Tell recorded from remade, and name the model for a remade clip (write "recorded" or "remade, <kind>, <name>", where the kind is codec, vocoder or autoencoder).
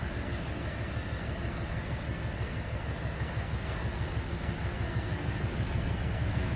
remade, codec, SNAC